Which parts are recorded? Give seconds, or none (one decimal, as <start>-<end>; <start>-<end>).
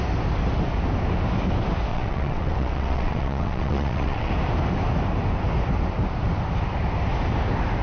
0.0-1.9; 4.3-7.8